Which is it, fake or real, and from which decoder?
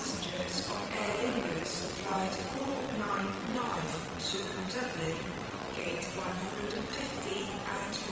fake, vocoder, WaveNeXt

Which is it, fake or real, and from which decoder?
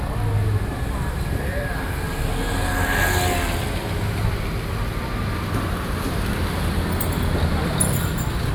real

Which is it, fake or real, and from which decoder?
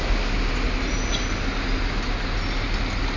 real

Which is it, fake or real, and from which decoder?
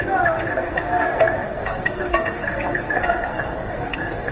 fake, codec, SNAC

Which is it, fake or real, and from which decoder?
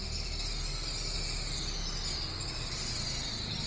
real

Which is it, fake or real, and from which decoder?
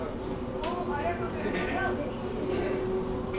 real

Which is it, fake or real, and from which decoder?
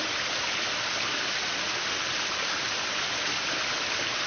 real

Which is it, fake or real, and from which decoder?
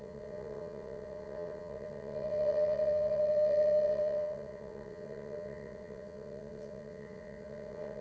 fake, vocoder, WaveNeXt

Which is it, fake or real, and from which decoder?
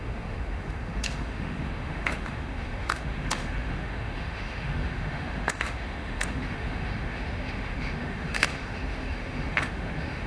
fake, autoencoder, DAC-VAE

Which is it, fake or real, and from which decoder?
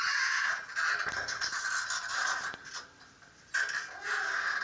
real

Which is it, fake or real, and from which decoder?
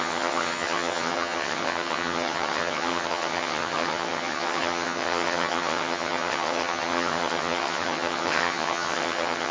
fake, vocoder, HiFi-GAN